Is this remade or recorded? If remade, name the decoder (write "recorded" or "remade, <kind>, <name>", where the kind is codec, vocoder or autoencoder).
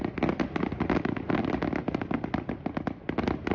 recorded